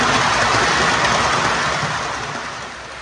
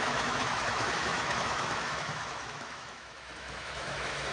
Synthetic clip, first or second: second